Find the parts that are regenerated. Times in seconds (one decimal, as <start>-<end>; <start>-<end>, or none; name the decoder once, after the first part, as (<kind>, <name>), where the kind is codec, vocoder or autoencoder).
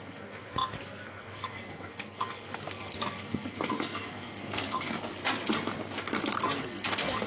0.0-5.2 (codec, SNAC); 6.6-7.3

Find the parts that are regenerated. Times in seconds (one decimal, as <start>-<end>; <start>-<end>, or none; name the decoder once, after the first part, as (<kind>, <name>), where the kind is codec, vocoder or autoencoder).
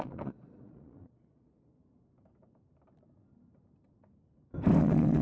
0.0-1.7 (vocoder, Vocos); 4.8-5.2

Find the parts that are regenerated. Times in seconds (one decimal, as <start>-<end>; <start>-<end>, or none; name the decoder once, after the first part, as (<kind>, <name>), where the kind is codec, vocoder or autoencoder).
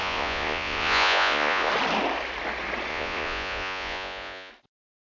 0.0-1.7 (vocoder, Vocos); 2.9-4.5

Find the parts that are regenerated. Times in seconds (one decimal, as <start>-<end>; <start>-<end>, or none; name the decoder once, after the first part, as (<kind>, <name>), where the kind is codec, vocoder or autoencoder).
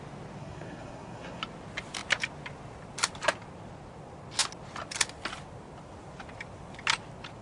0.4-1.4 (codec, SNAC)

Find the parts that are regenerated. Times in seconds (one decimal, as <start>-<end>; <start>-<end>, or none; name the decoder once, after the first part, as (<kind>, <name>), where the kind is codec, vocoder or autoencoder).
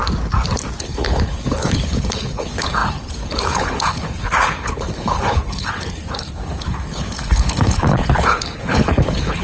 0.8-9.4 (codec, HILCodec)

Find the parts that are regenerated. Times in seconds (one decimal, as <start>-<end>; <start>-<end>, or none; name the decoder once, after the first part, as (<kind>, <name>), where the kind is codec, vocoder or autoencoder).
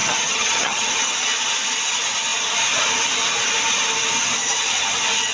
0.0-0.9 (vocoder, HiFi-GAN)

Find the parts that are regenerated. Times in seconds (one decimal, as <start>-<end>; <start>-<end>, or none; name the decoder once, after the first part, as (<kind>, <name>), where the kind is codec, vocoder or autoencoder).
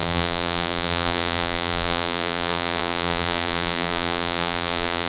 0.0-5.1 (vocoder, BigVGAN v2)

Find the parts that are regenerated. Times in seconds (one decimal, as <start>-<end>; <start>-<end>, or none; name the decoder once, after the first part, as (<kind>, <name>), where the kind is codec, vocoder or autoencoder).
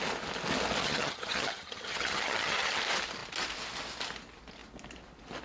0.8-2.8 (vocoder, HiFi-GAN)